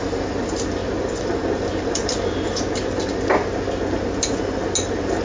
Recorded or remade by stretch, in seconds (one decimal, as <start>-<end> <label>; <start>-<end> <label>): 0.0-5.2 recorded